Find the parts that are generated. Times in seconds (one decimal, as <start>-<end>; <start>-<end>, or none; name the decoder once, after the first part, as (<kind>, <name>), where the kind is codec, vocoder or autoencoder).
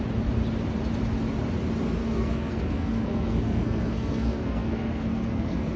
2.0-5.8 (codec, SNAC)